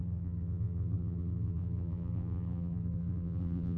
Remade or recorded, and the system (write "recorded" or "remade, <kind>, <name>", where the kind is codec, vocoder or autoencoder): remade, vocoder, BigVGAN v2